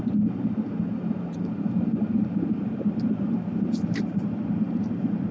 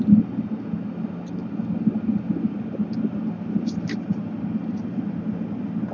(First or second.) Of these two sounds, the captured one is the second